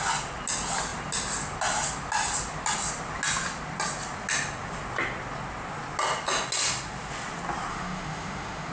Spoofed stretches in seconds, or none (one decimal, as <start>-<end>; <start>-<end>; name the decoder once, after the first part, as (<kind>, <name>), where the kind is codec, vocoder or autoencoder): 7.7-8.7 (autoencoder, DAC-VAE)